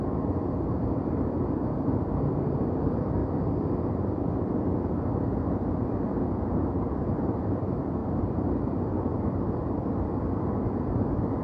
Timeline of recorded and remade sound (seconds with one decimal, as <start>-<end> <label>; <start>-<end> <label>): 0.0-3.2 remade; 3.2-5.5 recorded; 5.5-11.4 remade